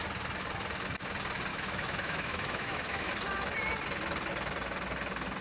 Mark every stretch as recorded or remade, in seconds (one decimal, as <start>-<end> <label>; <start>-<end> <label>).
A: 0.0-1.5 recorded; 1.5-3.1 remade; 3.1-5.4 recorded